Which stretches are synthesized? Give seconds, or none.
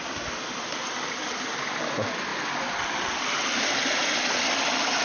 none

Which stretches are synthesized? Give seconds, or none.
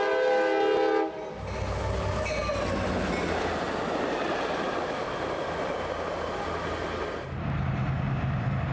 none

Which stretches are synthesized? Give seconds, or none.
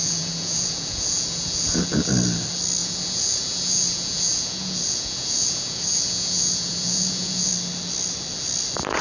0.0-1.8 (vocoder, Vocos); 2.8-7.5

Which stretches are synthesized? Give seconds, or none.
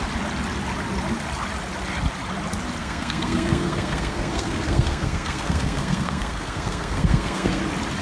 2.8-7.6 (codec, SNAC)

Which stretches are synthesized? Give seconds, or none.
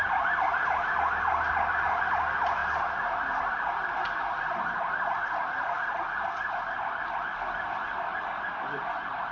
none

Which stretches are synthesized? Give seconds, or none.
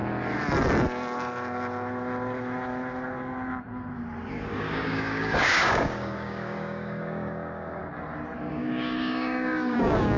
4.3-7.8 (codec, DAC); 8.5-10.2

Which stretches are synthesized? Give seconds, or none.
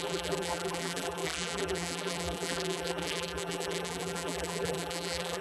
0.0-5.4 (vocoder, BigVGAN v2)